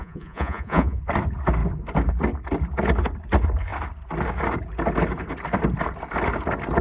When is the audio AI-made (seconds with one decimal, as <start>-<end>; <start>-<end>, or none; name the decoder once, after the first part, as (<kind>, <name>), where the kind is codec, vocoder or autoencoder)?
0.0-1.0 (vocoder, Vocos)